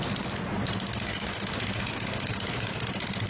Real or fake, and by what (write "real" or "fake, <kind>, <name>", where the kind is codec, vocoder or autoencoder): real